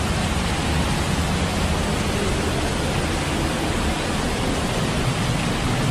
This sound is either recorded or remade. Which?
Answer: recorded